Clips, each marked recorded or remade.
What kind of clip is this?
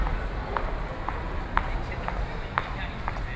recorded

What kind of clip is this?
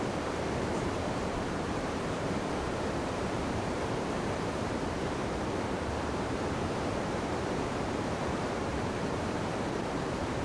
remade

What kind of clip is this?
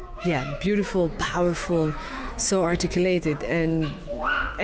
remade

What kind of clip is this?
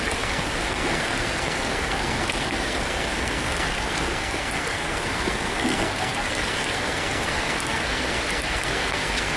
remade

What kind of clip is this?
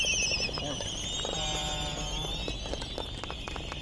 recorded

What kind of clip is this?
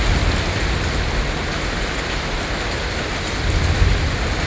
recorded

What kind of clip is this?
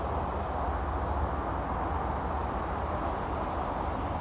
recorded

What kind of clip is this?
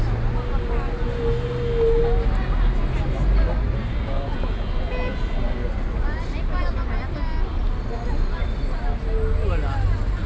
recorded